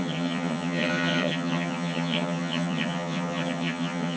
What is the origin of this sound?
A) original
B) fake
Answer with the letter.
B